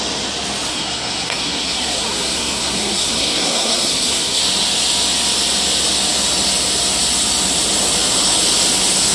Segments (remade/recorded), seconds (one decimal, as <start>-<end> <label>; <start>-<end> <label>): 0.0-0.7 recorded; 0.7-4.4 remade; 4.4-9.1 recorded

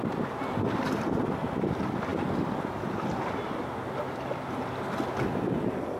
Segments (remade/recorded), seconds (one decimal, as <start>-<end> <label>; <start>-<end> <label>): 0.0-6.0 recorded

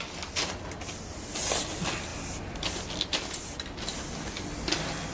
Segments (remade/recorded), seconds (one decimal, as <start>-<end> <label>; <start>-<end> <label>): 0.0-5.1 recorded

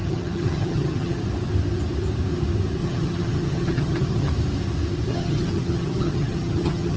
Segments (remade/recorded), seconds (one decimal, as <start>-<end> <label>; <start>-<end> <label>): 0.0-1.2 remade; 1.2-2.8 recorded; 2.8-4.3 remade; 4.3-5.1 recorded; 5.1-7.0 remade

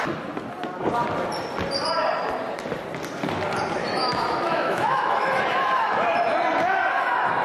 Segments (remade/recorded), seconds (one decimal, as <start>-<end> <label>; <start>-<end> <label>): 0.0-3.8 recorded; 3.8-5.4 remade; 5.4-7.4 recorded

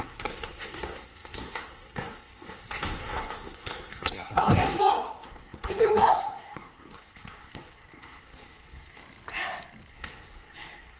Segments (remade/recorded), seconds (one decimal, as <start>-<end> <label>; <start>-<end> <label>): 0.0-9.0 remade; 9.0-9.9 recorded; 9.9-11.0 remade

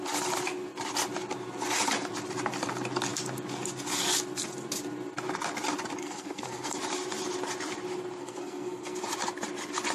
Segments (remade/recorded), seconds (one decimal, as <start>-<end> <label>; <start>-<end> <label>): 0.0-6.0 recorded; 6.0-6.8 remade; 6.8-8.2 recorded; 8.2-9.0 remade; 9.0-9.9 recorded